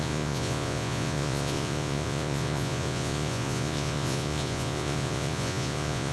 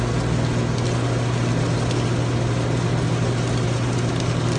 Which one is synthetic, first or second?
first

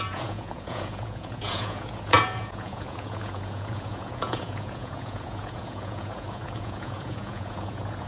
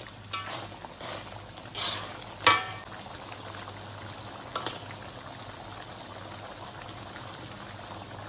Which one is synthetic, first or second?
first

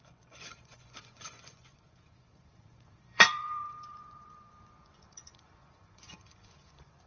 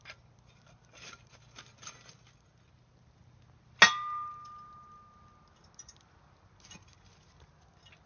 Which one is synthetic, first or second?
first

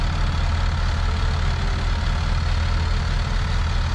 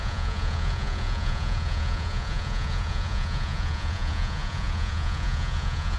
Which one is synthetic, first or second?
second